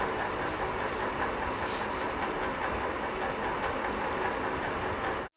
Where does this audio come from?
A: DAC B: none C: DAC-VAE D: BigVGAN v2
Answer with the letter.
B